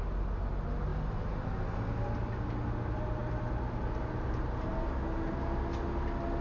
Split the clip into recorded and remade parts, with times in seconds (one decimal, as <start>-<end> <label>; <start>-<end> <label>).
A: 0.0-6.4 recorded